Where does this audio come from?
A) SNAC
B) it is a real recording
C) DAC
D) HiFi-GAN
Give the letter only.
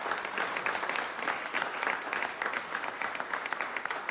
B